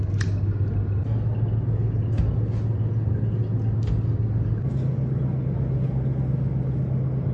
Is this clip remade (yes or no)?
no